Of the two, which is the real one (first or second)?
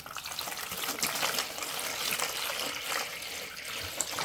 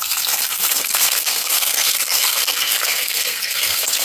first